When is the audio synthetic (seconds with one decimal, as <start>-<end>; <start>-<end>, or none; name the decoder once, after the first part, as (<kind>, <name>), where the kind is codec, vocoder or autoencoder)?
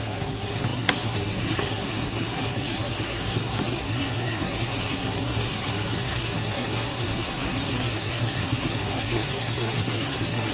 0.0-10.5 (codec, SNAC)